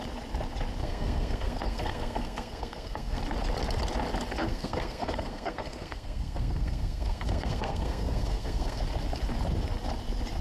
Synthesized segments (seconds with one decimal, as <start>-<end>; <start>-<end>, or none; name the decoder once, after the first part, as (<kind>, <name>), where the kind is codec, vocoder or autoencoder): 0.8-3.2 (codec, SNAC); 4.4-8.8